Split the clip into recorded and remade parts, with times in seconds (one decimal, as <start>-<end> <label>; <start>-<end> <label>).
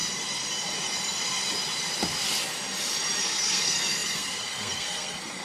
0.0-3.2 recorded; 3.2-5.4 remade